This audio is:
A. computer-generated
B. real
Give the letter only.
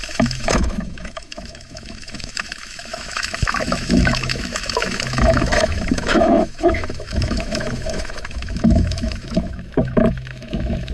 A